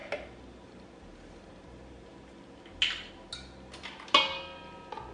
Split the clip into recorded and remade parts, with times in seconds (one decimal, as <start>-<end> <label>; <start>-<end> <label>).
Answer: 0.0-5.1 recorded